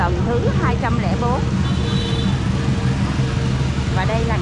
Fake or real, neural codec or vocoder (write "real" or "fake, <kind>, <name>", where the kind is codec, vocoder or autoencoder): real